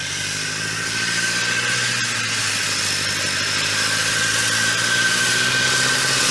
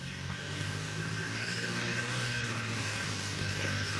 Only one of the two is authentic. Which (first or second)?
first